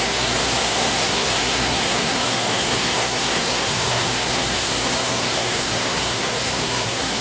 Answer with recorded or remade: remade